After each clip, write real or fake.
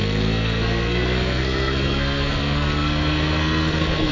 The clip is fake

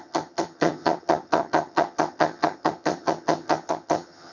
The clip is fake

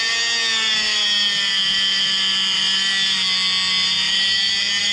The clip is real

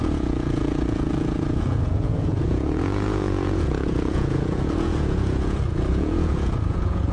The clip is fake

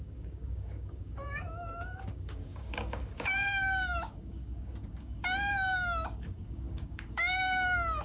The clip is fake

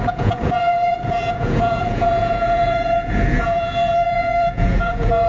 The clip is fake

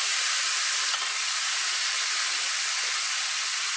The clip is real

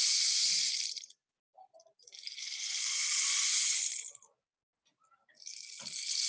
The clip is real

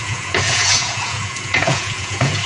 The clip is fake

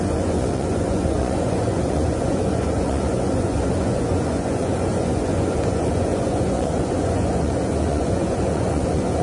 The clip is fake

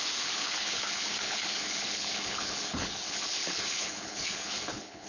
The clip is fake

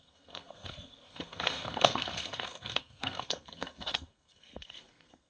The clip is fake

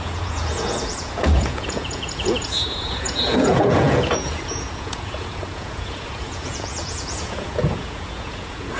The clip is fake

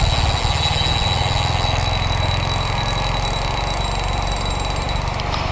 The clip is real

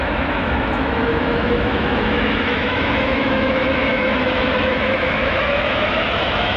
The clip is fake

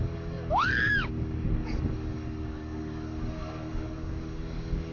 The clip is fake